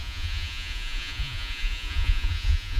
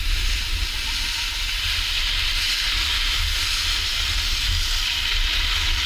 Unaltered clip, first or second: second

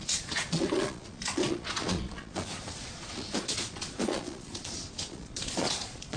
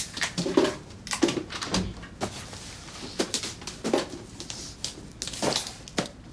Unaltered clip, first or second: second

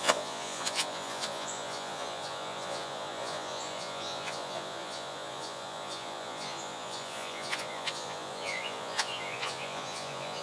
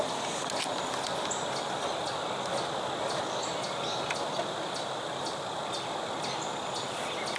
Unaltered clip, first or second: second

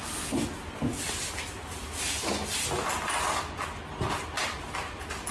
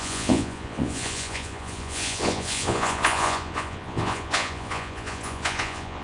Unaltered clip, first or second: first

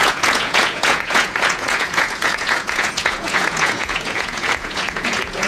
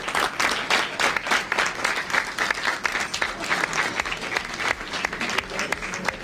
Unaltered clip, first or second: second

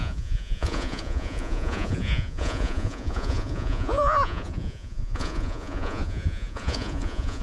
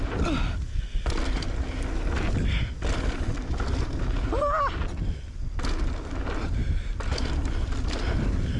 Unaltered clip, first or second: second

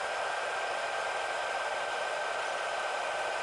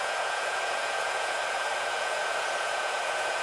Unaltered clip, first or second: first